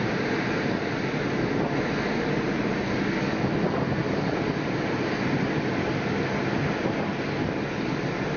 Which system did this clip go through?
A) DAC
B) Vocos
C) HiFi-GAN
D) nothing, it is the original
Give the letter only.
D